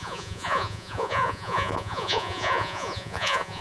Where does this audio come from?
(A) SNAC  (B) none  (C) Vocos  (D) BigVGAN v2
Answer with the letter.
C